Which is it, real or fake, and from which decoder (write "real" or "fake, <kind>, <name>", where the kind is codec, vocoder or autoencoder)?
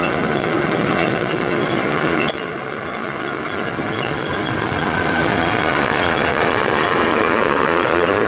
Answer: fake, vocoder, Vocos